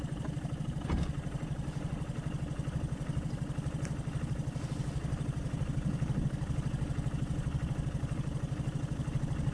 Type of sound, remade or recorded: recorded